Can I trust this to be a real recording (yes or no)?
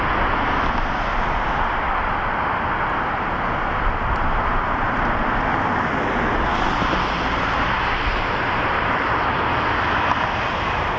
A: yes